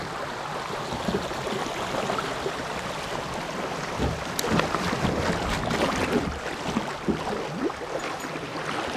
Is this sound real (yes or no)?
yes